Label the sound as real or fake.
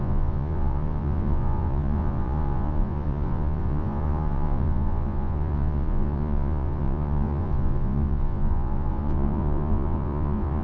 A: fake